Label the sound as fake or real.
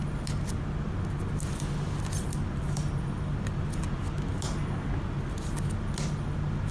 real